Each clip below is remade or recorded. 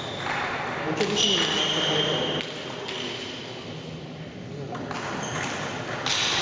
recorded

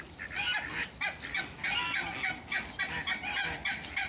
recorded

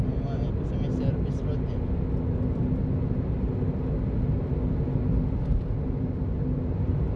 recorded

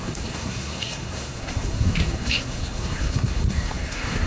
remade